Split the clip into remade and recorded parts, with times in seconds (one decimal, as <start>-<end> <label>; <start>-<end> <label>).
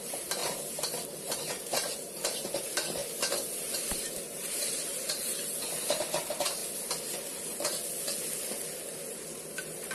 0.0-0.4 remade; 0.4-1.2 recorded; 1.2-3.0 remade; 3.0-3.5 recorded; 3.5-6.6 remade; 6.6-9.1 recorded; 9.1-9.9 remade